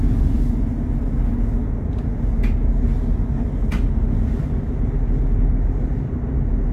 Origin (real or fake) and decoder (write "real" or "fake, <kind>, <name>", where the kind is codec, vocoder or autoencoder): real